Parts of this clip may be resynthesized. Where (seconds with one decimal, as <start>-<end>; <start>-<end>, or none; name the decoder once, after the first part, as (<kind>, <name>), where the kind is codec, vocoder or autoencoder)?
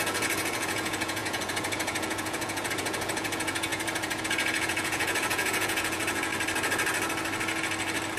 0.0-6.3 (vocoder, Vocos)